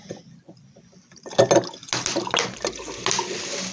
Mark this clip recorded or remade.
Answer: recorded